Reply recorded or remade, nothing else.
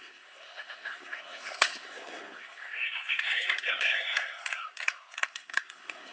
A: remade